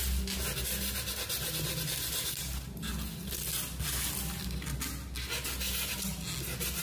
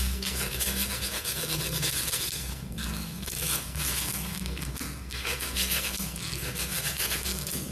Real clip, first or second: first